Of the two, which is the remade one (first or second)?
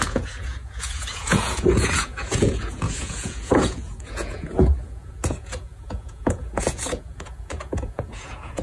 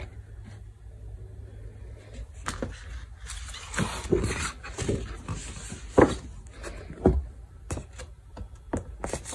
first